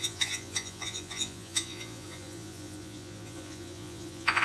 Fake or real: fake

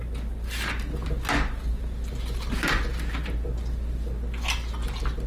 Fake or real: real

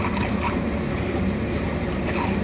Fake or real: real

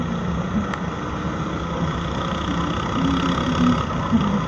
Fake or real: real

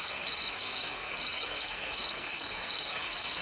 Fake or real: fake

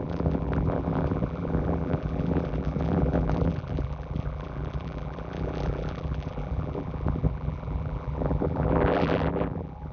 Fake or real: fake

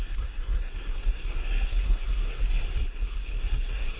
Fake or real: fake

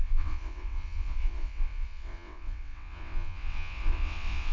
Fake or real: fake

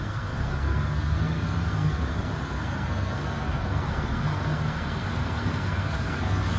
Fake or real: fake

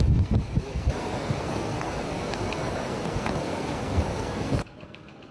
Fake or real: fake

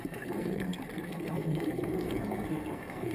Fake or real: fake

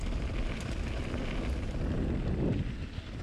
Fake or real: real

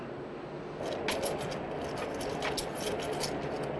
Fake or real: real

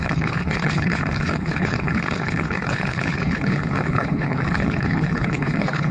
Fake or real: fake